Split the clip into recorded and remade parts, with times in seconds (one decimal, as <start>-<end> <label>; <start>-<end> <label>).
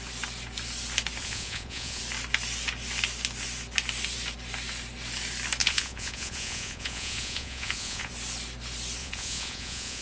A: 0.0-1.2 recorded; 1.2-2.0 remade; 2.0-5.6 recorded; 5.6-8.1 remade; 8.1-9.0 recorded; 9.0-10.0 remade